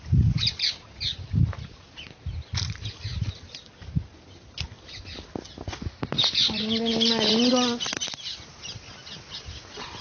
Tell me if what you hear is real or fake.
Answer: real